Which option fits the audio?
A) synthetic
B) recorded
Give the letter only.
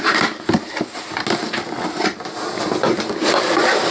B